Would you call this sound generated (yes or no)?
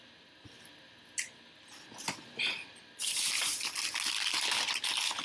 no